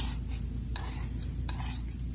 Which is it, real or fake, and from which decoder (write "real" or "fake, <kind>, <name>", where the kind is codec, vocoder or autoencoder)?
real